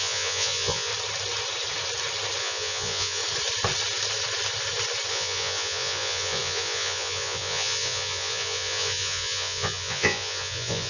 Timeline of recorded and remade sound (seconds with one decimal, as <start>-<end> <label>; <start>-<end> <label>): 0.0-0.9 remade; 0.9-2.4 recorded; 2.4-3.2 remade; 3.2-5.1 recorded; 5.1-10.9 remade